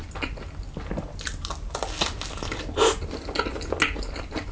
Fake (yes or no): no